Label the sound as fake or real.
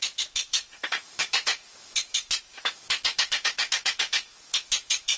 fake